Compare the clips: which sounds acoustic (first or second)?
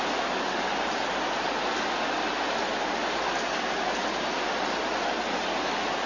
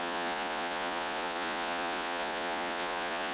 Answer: first